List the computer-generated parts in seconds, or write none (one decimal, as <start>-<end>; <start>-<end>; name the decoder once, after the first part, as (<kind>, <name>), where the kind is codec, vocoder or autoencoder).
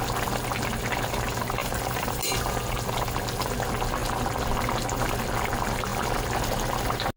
1.6-2.2 (vocoder, BigVGAN v2)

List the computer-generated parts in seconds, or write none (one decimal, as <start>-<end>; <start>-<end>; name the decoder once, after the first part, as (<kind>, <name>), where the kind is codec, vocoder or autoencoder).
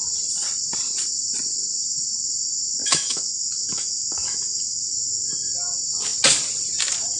2.8-4.9 (autoencoder, DAC-VAE)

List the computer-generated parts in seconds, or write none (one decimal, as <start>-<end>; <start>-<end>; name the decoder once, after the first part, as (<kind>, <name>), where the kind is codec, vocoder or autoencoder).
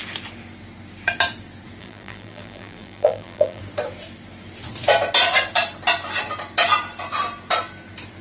1.8-3.6 (vocoder, BigVGAN v2)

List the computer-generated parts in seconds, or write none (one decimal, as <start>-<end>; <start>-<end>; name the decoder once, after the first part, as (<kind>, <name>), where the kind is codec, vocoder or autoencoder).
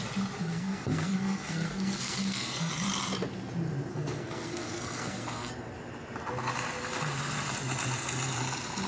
0.4-2.7 (codec, SNAC); 3.9-5.5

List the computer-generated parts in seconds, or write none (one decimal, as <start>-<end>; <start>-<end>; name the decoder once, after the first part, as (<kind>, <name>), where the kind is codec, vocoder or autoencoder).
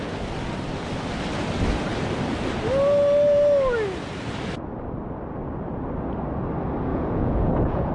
6.9-7.9 (vocoder, Vocos)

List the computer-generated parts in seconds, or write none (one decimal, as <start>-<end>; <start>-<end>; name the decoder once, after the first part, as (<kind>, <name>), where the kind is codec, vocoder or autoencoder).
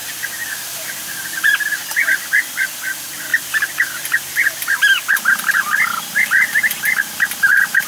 none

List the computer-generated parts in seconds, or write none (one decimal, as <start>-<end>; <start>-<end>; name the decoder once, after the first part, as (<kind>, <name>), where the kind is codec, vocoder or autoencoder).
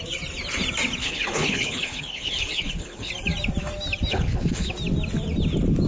1.0-3.1 (codec, HILCodec); 4.1-4.7